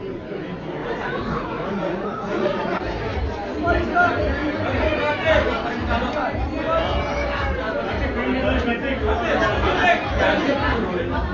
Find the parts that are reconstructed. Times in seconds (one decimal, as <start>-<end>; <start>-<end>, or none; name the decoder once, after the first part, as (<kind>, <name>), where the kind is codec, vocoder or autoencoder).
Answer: 0.8-2.6 (vocoder, Vocos)